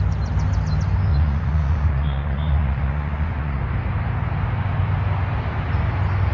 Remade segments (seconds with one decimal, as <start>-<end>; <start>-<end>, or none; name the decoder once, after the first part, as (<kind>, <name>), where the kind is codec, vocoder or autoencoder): 1.1-3.6 (vocoder, Vocos)

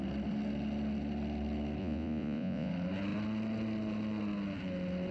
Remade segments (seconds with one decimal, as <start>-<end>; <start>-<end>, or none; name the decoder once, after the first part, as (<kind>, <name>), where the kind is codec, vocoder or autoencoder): 1.8-2.7 (vocoder, Vocos)

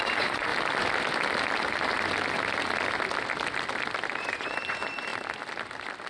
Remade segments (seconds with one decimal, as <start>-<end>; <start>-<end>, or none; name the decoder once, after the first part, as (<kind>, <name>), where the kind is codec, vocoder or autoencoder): 0.0-0.5 (vocoder, Vocos); 4.2-5.1

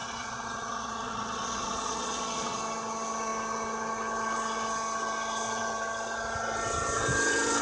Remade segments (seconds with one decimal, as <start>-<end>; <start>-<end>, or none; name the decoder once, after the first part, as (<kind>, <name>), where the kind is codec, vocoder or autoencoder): 0.0-2.6 (vocoder, Vocos)

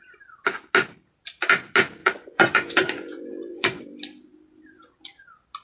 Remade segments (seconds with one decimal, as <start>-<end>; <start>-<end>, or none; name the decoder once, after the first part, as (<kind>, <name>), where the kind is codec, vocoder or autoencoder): 2.0-3.8 (vocoder, Vocos)

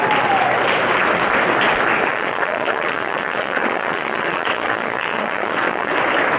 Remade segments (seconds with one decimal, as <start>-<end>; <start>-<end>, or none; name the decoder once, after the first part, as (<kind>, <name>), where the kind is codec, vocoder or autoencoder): 2.1-5.9 (vocoder, Vocos)

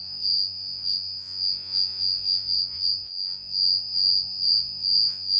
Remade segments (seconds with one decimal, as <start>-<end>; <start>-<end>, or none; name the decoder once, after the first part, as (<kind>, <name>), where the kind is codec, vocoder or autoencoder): 0.0-5.4 (vocoder, Vocos)

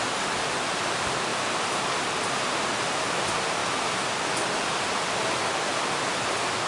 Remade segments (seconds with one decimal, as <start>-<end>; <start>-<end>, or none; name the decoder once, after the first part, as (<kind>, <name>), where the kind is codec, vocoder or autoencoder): none